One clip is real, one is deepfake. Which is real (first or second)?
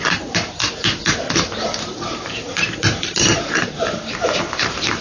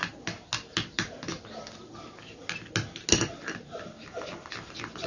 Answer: second